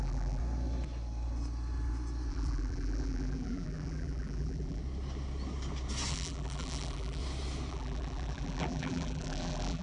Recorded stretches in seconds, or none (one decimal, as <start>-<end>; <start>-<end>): 0.4-2.3; 4.8-6.1; 7.2-7.7

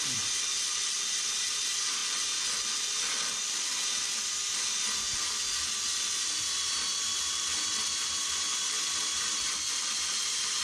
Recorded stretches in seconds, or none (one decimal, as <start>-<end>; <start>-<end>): 2.0-6.5

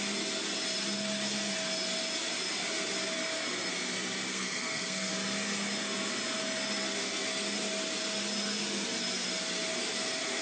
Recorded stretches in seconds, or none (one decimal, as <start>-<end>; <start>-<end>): 0.0-4.3; 5.1-10.4

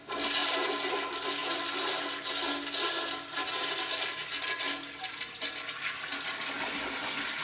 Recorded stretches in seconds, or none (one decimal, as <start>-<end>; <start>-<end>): 0.0-7.4

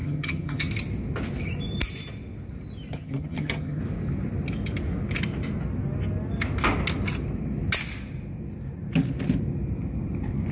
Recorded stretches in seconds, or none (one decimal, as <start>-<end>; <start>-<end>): 0.7-2.9; 3.8-10.5

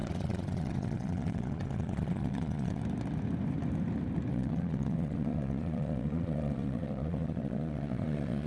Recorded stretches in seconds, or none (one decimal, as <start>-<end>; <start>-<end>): 2.8-4.3

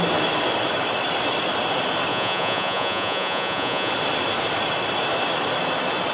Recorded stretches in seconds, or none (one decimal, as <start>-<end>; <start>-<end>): 0.0-2.1; 3.9-6.1

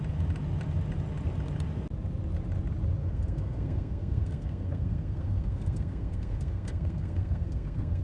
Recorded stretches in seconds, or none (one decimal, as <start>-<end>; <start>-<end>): 0.0-3.0